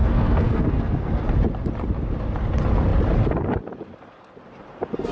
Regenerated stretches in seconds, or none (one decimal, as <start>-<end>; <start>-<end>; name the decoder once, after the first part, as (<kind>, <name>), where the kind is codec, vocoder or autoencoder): 0.0-1.3 (codec, SNAC)